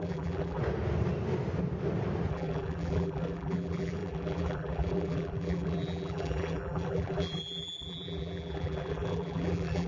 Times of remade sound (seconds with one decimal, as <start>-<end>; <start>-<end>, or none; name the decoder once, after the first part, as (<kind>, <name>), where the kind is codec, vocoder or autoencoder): 0.0-0.6 (vocoder, BigVGAN v2); 2.3-9.9